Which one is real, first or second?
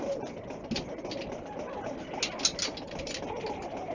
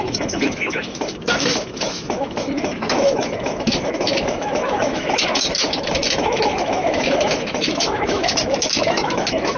first